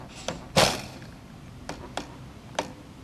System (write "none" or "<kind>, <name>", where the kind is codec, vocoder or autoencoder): none